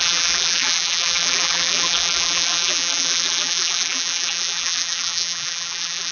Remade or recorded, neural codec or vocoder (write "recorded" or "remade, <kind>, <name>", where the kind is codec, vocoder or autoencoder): remade, vocoder, BigVGAN v2